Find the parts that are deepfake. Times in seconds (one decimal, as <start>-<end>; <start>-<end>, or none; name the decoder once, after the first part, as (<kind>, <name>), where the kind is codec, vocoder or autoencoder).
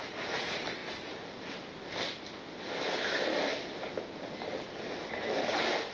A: none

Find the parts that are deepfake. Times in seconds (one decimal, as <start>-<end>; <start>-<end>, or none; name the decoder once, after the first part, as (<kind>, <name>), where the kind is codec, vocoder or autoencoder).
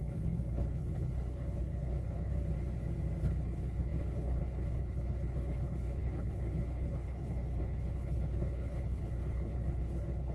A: 0.0-2.3 (codec, HILCodec); 3.2-10.3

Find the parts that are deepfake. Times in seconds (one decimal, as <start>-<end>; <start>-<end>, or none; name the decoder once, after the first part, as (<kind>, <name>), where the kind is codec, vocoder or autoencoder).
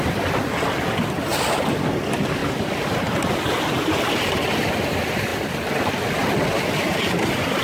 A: 2.4-3.3 (vocoder, BigVGAN v2); 5.3-5.9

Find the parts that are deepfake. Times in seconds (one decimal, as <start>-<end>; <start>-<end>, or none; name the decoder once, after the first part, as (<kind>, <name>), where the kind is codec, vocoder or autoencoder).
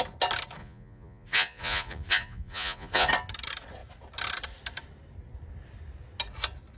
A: 0.6-3.1 (vocoder, Vocos)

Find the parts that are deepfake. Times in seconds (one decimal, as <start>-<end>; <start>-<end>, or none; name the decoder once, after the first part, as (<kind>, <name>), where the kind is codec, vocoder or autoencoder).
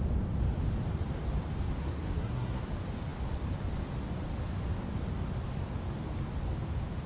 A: 1.8-2.6 (codec, SNAC)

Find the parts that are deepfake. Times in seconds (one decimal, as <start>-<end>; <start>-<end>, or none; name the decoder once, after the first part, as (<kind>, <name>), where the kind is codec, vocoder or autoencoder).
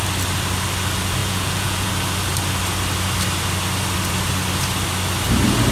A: 1.2-1.9 (vocoder, Vocos)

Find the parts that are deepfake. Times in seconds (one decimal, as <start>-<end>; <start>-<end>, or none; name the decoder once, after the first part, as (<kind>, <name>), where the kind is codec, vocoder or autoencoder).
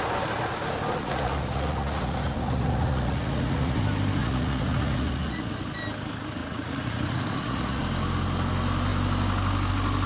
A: 1.0-3.8 (vocoder, Vocos); 4.2-5.5; 6.4-7.8